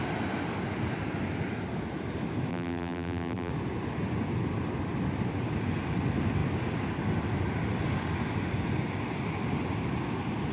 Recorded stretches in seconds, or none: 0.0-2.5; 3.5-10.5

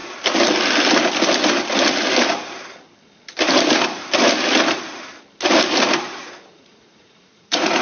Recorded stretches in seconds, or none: 0.0-6.2

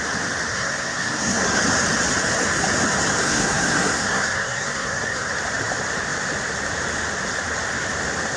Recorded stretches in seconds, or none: 0.0-0.5; 1.6-3.2; 5.3-8.4

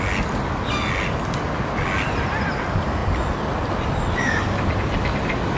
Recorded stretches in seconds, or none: 0.0-5.6

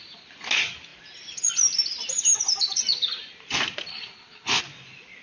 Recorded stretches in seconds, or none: 0.0-3.9; 4.6-5.2

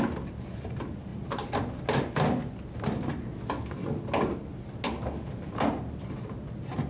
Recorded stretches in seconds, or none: 0.0-6.9